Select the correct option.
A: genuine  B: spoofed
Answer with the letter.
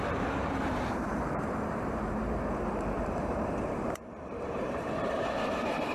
B